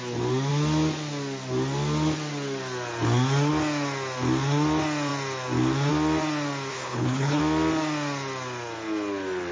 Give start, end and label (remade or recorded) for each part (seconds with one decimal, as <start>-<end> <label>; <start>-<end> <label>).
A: 0.0-6.7 recorded; 6.7-7.4 remade; 7.4-9.5 recorded

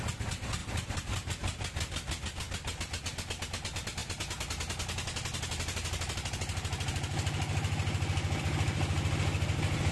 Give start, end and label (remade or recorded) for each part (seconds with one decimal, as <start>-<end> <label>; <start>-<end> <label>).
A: 0.0-9.9 recorded

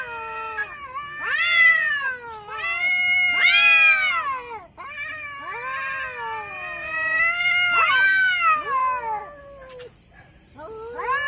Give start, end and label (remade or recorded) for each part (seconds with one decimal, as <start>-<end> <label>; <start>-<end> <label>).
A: 0.0-11.3 recorded

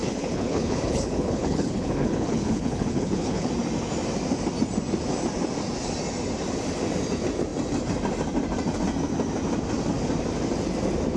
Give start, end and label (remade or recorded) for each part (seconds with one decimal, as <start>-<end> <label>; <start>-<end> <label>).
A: 0.0-3.5 remade; 3.5-11.2 recorded

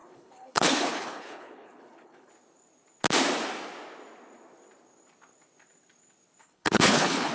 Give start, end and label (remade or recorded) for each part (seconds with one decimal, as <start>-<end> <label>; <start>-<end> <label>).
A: 0.0-2.3 remade; 2.3-6.4 recorded; 6.4-7.3 remade

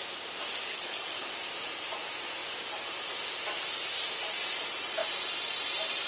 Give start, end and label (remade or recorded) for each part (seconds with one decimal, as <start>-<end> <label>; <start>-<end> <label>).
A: 0.0-0.7 recorded; 0.7-1.3 remade; 1.3-6.1 recorded

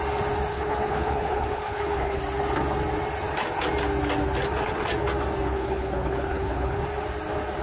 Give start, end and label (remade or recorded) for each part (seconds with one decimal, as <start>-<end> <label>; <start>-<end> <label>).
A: 0.0-0.5 recorded; 0.5-2.2 remade; 2.2-5.5 recorded; 5.5-6.8 remade; 6.8-7.6 recorded